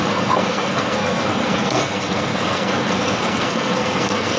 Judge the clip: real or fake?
fake